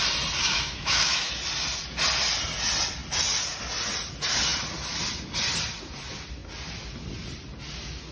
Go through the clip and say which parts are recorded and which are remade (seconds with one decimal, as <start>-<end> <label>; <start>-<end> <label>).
0.0-0.4 recorded; 0.4-1.3 remade; 1.3-8.1 recorded

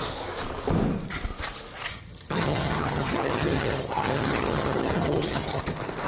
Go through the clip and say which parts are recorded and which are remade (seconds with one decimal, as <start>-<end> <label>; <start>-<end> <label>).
0.0-1.9 recorded; 1.9-5.6 remade; 5.6-6.1 recorded

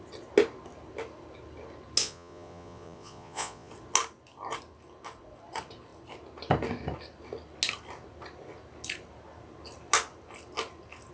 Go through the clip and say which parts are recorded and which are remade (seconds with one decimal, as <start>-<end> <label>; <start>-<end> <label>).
0.0-2.0 recorded; 2.0-3.7 remade; 3.7-11.1 recorded

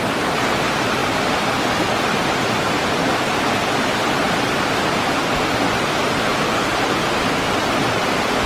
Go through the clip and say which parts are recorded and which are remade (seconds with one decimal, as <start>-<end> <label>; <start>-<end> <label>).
0.0-1.0 recorded; 1.0-3.8 remade; 3.8-8.5 recorded

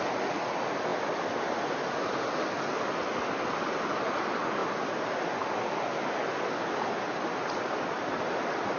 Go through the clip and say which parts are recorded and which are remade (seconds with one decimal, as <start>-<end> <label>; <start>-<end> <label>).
0.0-8.8 recorded

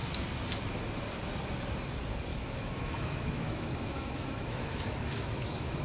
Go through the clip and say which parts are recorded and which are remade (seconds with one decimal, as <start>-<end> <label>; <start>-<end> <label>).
0.0-2.3 recorded; 2.3-5.8 remade